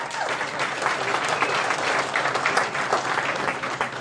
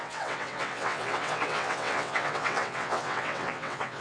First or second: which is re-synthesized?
second